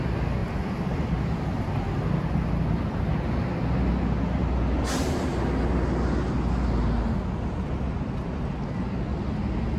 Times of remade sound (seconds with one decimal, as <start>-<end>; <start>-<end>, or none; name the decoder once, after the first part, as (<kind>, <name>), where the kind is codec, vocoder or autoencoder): 0.4-1.7 (vocoder, BigVGAN v2)